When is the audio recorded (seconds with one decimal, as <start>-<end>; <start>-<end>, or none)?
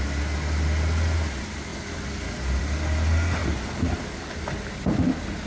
0.0-5.5